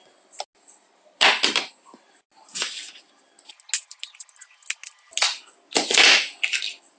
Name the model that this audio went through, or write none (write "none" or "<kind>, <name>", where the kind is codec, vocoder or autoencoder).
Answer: none